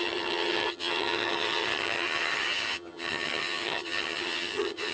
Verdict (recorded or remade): remade